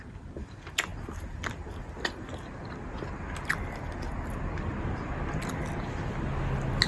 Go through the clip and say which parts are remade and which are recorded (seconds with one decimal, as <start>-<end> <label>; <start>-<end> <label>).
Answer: 0.0-6.9 recorded